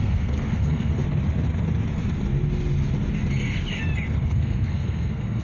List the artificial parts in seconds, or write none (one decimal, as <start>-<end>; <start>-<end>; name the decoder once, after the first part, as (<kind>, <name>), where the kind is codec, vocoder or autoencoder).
0.0-1.0 (codec, SNAC); 4.2-5.4